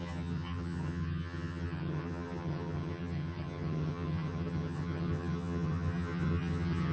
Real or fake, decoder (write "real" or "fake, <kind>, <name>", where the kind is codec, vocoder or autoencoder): fake, vocoder, HiFi-GAN